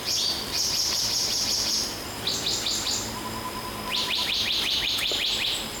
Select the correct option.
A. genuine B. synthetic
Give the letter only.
A